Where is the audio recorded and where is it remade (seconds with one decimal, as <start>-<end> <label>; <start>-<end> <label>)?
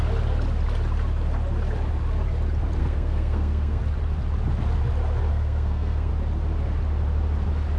0.0-2.8 recorded; 2.8-3.8 remade; 3.8-5.3 recorded; 5.3-6.1 remade; 6.1-7.8 recorded